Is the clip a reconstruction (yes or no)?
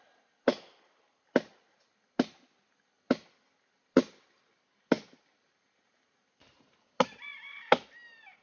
no